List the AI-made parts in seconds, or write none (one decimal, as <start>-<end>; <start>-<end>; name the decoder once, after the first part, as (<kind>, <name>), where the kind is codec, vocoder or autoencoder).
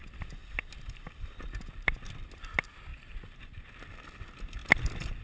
0.4-2.1 (vocoder, BigVGAN v2); 2.9-4.0; 4.6-5.2